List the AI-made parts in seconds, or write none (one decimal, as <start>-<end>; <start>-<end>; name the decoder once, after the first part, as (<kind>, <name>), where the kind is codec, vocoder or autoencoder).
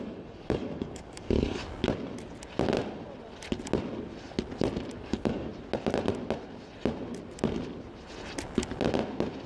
0.0-1.6 (codec, DAC); 5.0-5.5